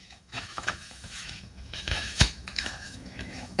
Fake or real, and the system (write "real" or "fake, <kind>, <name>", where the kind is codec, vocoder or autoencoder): fake, autoencoder, DAC-VAE